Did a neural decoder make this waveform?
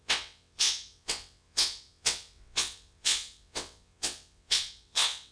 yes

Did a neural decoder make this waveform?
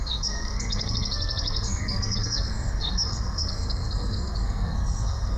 yes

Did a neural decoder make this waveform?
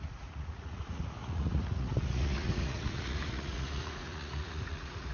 yes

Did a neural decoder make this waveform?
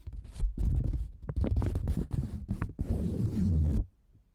no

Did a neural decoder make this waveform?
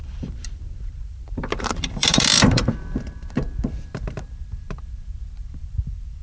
yes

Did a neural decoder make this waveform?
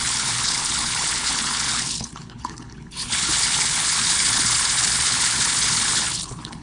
yes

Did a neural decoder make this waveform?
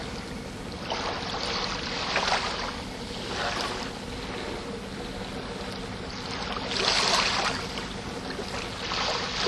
no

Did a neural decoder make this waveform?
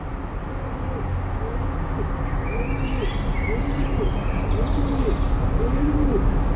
no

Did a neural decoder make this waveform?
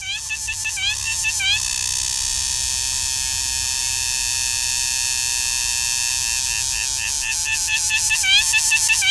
no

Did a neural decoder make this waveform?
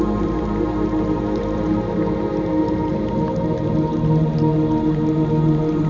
yes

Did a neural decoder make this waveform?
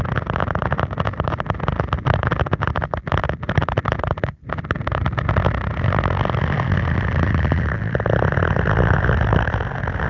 no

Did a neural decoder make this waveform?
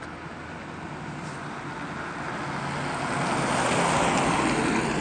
no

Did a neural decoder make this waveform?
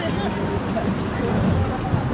no